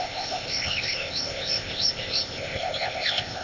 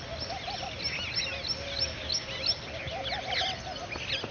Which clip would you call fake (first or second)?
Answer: first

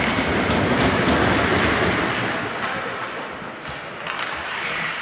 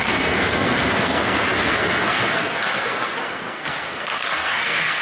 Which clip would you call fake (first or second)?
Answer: second